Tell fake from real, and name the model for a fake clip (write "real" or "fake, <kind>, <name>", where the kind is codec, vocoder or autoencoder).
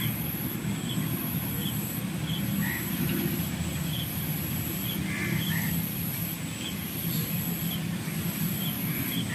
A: real